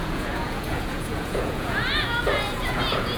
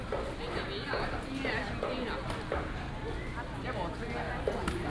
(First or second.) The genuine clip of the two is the second